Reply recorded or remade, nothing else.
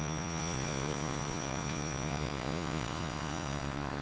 remade